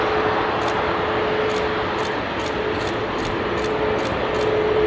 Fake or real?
real